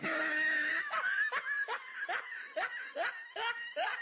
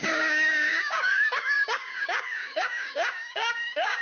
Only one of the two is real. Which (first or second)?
first